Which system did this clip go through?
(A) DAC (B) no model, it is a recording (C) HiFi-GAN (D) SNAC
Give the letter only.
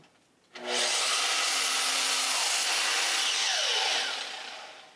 B